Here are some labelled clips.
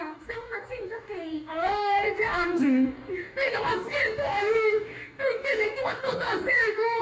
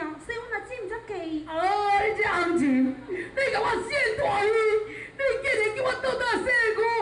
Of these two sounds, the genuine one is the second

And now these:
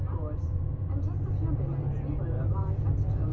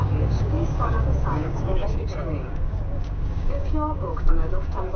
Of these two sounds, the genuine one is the first